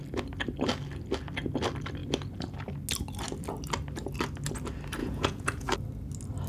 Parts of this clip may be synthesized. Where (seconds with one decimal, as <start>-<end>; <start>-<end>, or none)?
5.0-5.7

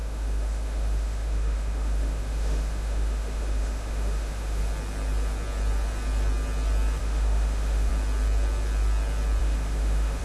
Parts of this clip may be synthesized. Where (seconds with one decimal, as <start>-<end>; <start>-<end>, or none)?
0.0-4.6; 7.0-7.9; 9.4-10.2

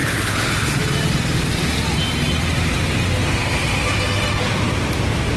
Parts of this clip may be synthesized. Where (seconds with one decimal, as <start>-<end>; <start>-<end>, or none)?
0.0-0.8

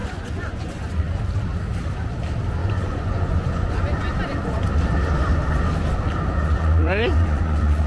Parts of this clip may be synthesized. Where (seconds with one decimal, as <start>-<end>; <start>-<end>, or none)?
0.0-1.2; 2.6-4.0; 6.3-7.9